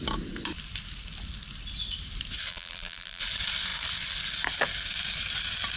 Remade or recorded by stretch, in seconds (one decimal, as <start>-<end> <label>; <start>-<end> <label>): 0.0-2.5 recorded; 2.5-3.2 remade; 3.2-5.8 recorded